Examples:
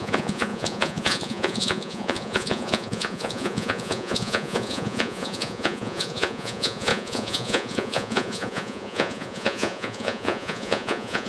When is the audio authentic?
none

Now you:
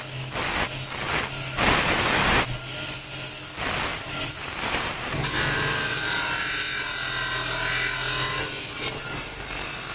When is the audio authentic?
0.0-3.9; 6.4-9.9

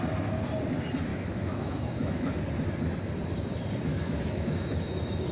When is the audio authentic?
0.0-1.1; 2.3-3.9

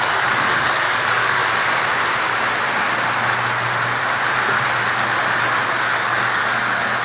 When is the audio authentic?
1.4-5.6

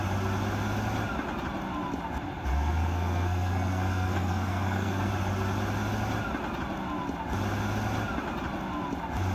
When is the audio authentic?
0.0-2.5; 5.1-9.3